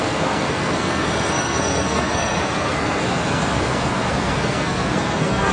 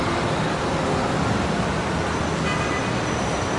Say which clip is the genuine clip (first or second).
second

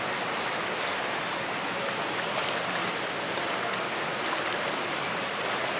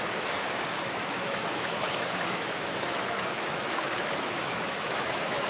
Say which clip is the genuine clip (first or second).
first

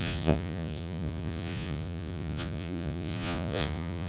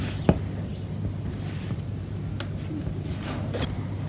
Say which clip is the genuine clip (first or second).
second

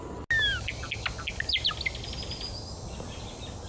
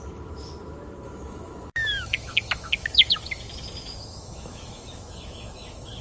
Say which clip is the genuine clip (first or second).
first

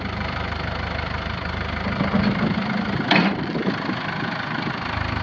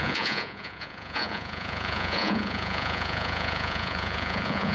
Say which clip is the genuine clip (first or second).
first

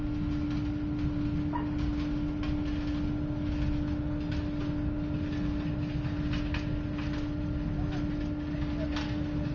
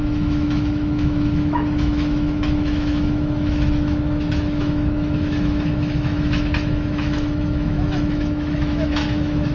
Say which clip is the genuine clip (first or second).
first